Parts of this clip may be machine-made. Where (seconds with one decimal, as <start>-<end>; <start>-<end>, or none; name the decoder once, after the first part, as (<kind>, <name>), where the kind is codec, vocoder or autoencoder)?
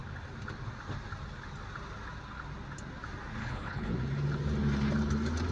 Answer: 3.4-3.9 (codec, HILCodec)